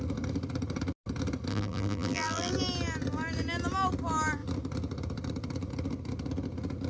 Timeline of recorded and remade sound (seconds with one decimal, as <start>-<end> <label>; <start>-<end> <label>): 0.0-1.5 recorded; 1.5-2.5 remade; 2.5-6.9 recorded